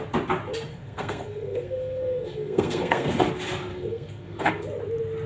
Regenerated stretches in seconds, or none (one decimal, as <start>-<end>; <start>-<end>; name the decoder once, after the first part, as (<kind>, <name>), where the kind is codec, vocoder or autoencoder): 0.7-3.3 (codec, SNAC); 3.7-4.5